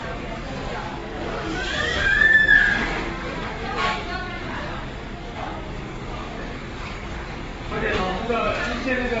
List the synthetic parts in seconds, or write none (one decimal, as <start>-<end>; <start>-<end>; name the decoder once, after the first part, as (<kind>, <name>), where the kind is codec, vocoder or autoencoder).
0.0-9.2 (codec, DAC)